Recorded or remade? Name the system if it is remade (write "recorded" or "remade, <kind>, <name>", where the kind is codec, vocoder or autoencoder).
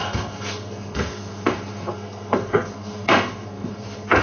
remade, codec, SNAC